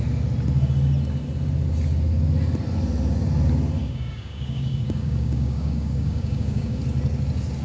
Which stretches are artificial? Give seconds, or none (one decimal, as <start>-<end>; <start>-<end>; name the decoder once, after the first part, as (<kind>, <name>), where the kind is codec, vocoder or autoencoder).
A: 3.8-6.8 (codec, DAC)